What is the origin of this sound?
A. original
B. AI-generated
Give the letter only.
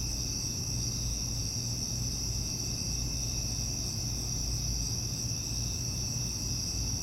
A